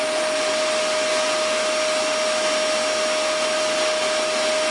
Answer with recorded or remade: recorded